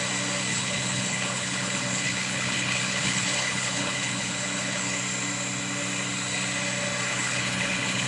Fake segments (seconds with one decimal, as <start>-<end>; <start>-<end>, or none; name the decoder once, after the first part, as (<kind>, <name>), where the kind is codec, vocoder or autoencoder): 0.5-5.0 (codec, HILCodec); 7.1-8.1